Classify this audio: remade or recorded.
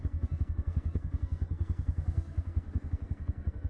remade